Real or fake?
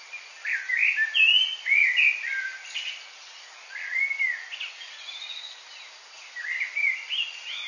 real